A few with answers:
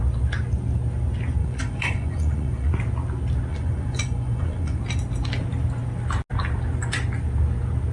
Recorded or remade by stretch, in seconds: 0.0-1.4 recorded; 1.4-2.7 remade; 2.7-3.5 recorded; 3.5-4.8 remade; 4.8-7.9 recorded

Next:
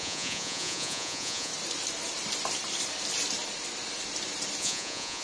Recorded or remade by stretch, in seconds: 0.0-1.5 remade; 1.5-4.6 recorded; 4.6-5.2 remade

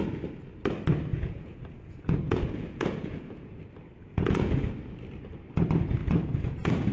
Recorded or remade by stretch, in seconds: 0.0-1.1 recorded; 1.1-3.6 remade; 3.6-4.0 recorded; 4.0-4.7 remade; 4.7-6.0 recorded; 6.0-6.9 remade

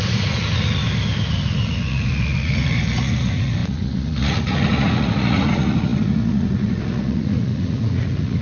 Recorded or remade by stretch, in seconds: 0.0-0.8 remade; 0.8-1.3 recorded; 1.3-8.4 remade